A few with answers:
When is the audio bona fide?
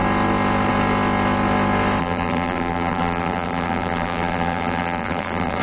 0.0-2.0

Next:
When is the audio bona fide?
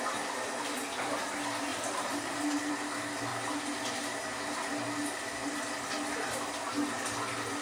0.0-1.7; 2.7-7.6